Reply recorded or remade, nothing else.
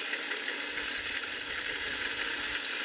recorded